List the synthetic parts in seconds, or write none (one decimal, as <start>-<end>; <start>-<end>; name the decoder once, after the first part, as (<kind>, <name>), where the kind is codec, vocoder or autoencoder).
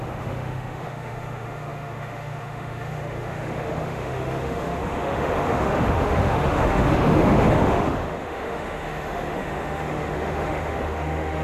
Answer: 0.0-11.4 (autoencoder, DAC-VAE)